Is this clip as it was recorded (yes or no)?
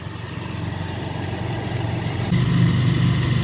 yes